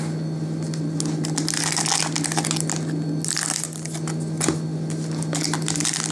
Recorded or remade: recorded